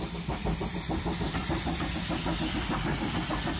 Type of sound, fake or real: real